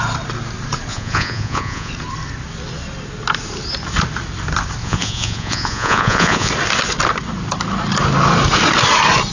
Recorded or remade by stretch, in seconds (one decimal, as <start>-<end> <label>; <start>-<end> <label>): 0.0-0.9 recorded; 0.9-1.9 remade; 1.9-4.8 recorded; 4.8-6.5 remade; 6.5-9.3 recorded